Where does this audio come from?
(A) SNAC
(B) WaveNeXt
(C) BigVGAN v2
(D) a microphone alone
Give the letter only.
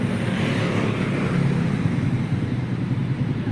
D